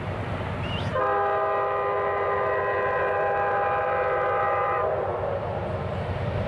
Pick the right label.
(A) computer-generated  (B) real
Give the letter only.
B